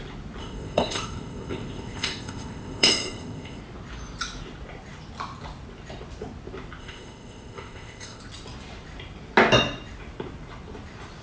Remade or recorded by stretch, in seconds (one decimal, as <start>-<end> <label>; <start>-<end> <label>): 0.0-0.4 recorded; 0.4-3.6 remade; 3.6-6.8 recorded; 6.8-8.2 remade; 8.2-11.2 recorded